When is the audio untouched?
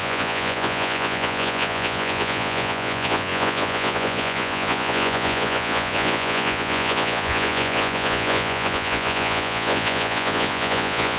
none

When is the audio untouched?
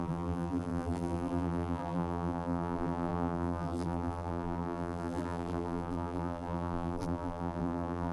none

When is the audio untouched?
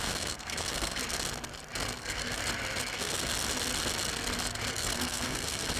1.0-2.0; 2.4-2.9; 3.3-4.7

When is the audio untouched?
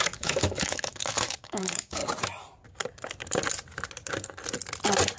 2.0-5.2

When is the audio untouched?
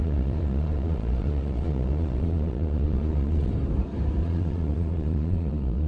3.5-4.2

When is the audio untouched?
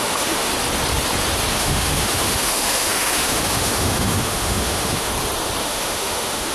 0.5-1.5; 5.1-5.6